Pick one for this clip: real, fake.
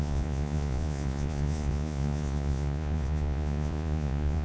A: fake